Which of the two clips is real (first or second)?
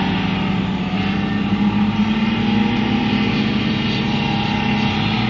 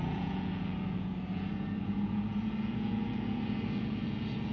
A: first